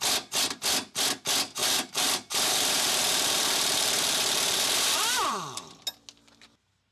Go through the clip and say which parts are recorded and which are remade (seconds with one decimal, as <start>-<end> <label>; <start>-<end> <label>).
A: 0.0-1.6 recorded; 1.6-5.7 remade; 5.7-6.9 recorded